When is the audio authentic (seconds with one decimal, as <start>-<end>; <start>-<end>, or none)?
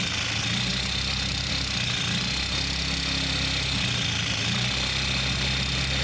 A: 0.0-6.0